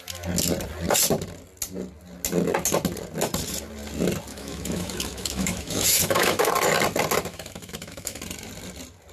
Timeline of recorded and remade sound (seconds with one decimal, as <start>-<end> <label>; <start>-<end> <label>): 0.0-4.3 recorded; 4.3-6.5 remade; 6.5-7.3 recorded; 7.3-8.2 remade; 8.2-9.1 recorded

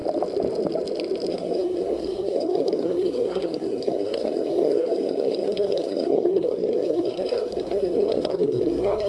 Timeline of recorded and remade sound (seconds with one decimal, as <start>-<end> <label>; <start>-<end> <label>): 0.0-1.3 recorded; 1.3-9.1 remade

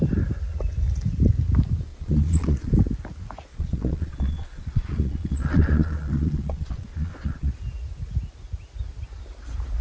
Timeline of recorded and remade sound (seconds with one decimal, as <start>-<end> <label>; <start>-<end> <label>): 0.0-1.9 recorded; 1.9-2.7 remade; 2.7-3.5 recorded; 3.5-7.5 remade; 7.5-9.8 recorded

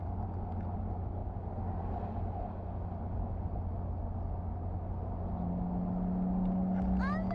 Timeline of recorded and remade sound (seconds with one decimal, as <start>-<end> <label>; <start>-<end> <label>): 0.0-7.3 recorded

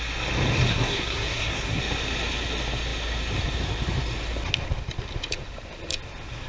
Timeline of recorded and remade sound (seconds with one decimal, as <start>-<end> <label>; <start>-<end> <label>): 0.0-0.7 recorded; 0.7-1.8 remade; 1.8-6.5 recorded

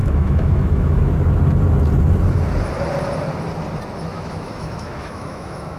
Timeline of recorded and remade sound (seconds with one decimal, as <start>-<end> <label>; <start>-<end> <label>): 0.0-1.1 remade; 1.1-4.1 recorded; 4.1-5.8 remade

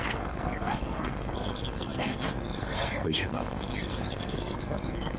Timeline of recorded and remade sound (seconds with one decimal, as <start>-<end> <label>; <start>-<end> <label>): 0.0-5.2 remade

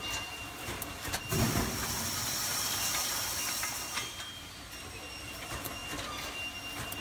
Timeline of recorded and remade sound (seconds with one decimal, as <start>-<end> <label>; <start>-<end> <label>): 0.0-5.8 remade; 5.8-7.0 recorded